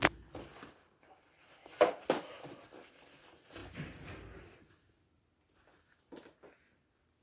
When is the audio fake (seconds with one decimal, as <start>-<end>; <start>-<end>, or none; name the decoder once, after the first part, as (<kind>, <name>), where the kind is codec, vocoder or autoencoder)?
none